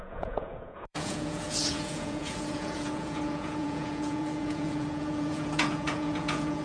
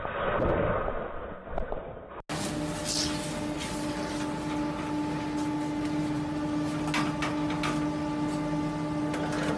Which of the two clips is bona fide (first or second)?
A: second